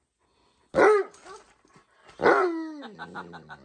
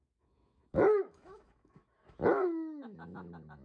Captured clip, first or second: first